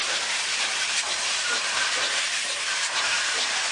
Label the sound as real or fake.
fake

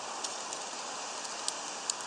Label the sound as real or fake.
real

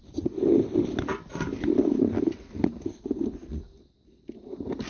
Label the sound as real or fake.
real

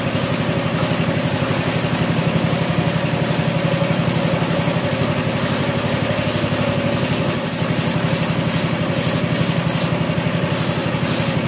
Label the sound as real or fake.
real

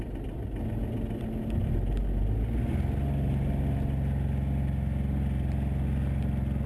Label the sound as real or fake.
real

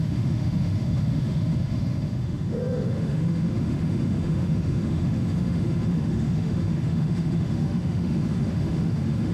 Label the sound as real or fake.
fake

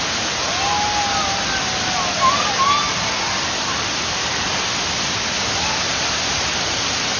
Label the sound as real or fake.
real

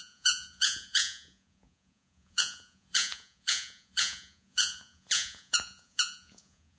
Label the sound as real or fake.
fake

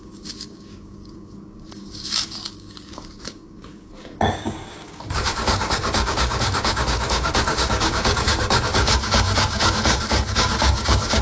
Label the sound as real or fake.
fake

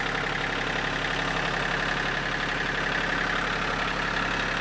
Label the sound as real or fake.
real